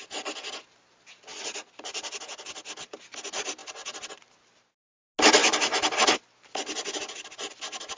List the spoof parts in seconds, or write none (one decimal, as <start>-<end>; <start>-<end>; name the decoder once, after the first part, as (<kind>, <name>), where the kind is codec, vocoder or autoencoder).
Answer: 1.3-2.2 (vocoder, BigVGAN v2); 5.4-7.0